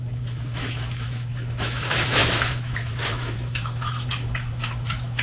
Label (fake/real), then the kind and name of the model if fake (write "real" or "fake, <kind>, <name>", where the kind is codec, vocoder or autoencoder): fake, autoencoder, DAC-VAE